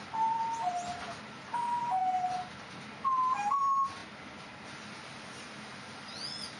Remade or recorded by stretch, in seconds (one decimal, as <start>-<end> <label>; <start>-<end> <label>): 0.0-6.6 recorded